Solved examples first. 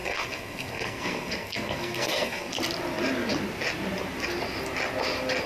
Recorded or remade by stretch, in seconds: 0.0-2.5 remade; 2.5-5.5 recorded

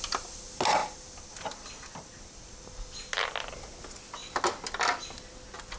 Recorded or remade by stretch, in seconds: 0.0-5.8 recorded